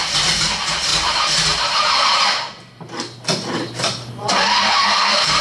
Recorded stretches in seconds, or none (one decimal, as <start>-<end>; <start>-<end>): 0.0-4.5